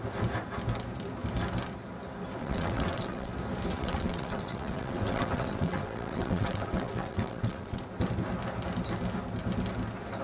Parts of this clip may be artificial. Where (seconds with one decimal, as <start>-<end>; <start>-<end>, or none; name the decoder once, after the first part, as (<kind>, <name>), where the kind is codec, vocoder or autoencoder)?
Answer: 2.4-3.3 (vocoder, WaveNeXt); 3.7-7.8